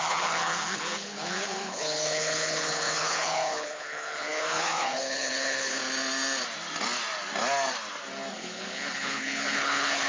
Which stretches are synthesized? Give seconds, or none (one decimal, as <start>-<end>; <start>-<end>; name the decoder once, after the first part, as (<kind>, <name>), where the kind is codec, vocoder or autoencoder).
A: 0.0-5.8 (codec, HILCodec); 8.3-10.1